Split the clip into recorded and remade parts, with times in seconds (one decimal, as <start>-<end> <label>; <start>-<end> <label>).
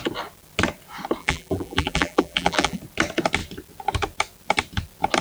0.0-1.2 recorded; 1.2-2.8 remade; 2.8-5.2 recorded